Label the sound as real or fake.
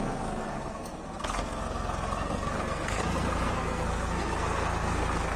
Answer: fake